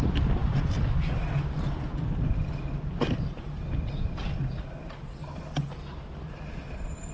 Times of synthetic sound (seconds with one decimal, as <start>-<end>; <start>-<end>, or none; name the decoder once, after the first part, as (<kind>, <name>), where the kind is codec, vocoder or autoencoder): none